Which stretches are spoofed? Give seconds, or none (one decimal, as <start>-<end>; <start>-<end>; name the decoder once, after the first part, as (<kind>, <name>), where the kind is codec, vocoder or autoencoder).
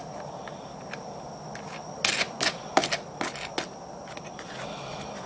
none